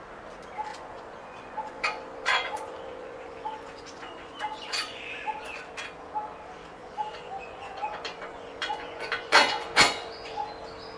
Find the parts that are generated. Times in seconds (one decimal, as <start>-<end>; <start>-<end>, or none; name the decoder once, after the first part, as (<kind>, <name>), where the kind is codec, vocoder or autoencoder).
0.7-5.6 (vocoder, Vocos); 6.8-10.5